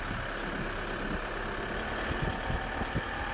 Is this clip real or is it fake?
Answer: real